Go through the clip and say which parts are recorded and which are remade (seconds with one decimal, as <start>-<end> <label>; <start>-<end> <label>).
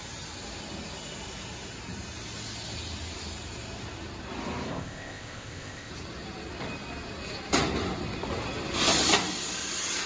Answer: 0.0-4.7 recorded; 4.7-5.9 remade; 5.9-10.1 recorded